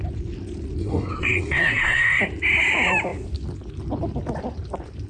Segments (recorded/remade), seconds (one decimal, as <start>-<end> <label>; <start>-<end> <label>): 0.0-0.8 recorded; 0.8-2.2 remade; 2.2-5.1 recorded